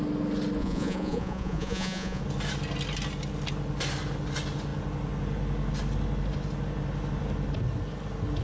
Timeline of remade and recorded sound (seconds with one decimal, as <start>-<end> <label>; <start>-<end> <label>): 0.0-0.6 recorded; 0.6-2.2 remade; 2.2-8.4 recorded